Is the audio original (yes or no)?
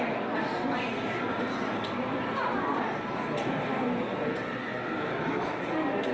yes